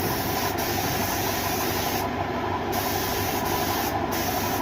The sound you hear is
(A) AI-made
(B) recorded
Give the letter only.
B